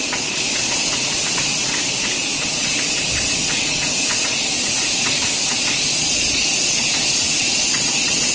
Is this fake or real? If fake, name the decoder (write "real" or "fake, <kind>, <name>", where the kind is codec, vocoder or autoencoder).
fake, vocoder, Vocos